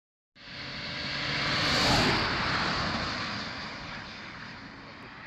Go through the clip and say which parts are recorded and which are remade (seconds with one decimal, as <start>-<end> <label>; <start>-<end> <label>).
0.0-5.3 recorded